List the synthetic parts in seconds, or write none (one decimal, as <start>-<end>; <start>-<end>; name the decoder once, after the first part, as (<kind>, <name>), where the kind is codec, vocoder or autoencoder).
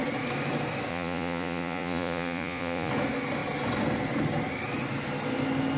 0.9-2.9 (vocoder, Vocos)